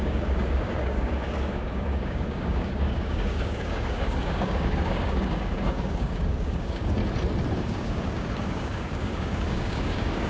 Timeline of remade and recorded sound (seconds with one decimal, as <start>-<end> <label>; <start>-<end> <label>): 0.0-7.0 remade; 7.0-7.6 recorded; 7.6-10.3 remade